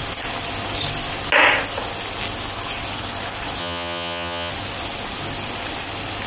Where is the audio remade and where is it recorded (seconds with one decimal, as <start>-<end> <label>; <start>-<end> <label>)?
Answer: 0.0-3.6 recorded; 3.6-4.5 remade; 4.5-6.3 recorded